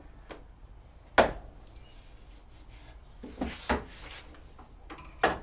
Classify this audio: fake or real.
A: real